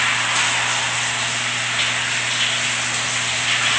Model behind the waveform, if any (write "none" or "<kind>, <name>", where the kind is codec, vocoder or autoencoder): none